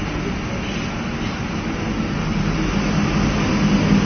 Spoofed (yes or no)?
no